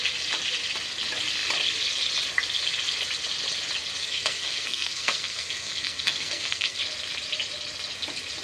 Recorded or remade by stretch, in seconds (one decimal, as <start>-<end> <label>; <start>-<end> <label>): 0.0-4.0 recorded; 4.0-6.8 remade; 6.8-8.4 recorded